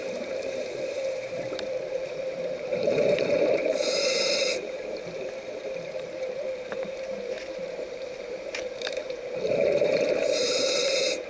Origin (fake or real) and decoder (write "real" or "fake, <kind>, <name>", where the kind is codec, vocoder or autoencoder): fake, vocoder, BigVGAN v2